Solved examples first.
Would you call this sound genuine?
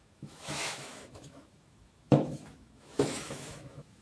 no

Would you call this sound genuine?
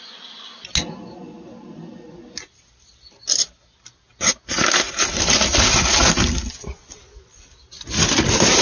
yes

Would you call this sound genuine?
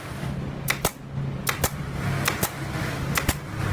yes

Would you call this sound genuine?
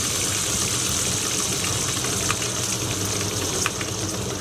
yes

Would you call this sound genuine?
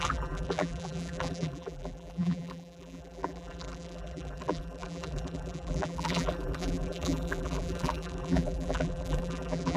no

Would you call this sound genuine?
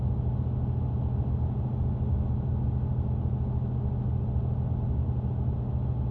yes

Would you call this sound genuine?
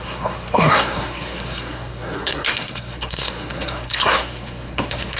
no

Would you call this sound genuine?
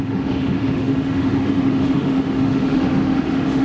no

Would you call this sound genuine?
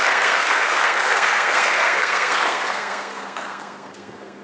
no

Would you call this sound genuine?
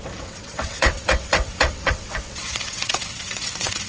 no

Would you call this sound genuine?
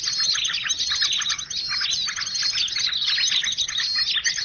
yes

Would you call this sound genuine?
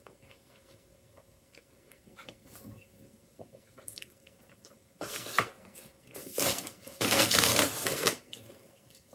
no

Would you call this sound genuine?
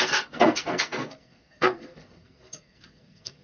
no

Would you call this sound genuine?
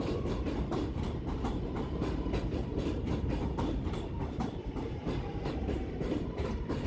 no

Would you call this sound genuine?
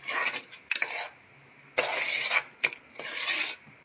yes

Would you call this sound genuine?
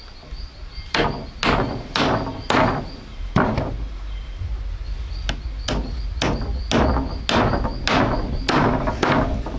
yes